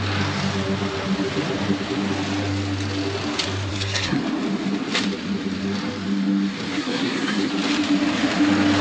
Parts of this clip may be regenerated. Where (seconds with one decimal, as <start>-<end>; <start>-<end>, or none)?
3.7-4.2; 6.7-7.5